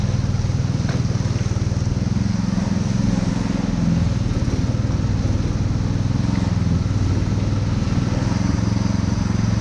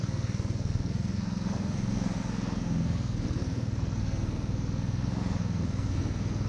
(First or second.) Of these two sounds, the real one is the first